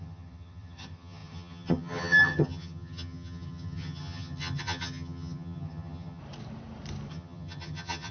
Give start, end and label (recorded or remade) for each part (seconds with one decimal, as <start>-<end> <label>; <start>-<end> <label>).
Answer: 0.0-6.2 remade; 6.2-7.1 recorded; 7.1-8.1 remade